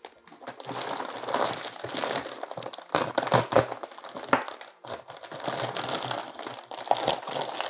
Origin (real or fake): real